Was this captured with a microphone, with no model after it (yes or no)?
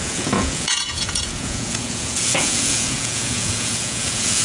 no